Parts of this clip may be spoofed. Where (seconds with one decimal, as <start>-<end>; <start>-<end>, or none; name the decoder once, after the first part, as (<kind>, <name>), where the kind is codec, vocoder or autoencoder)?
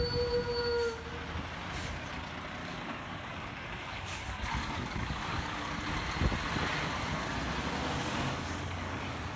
2.6-5.7 (codec, DAC); 7.8-9.0